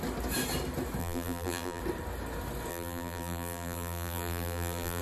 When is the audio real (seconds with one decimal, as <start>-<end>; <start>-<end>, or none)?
0.0-1.0; 1.8-2.7